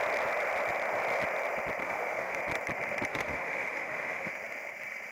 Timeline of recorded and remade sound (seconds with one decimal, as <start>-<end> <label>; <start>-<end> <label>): 0.0-1.8 recorded; 1.8-2.4 remade; 2.4-3.1 recorded; 3.1-4.3 remade; 4.3-5.1 recorded